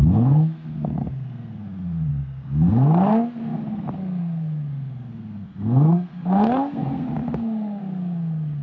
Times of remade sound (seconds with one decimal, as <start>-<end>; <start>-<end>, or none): 0.0-8.6